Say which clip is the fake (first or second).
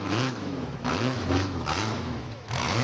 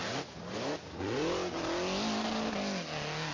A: first